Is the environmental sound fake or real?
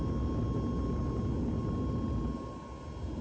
real